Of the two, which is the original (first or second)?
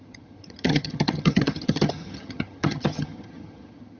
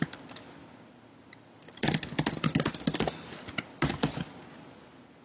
second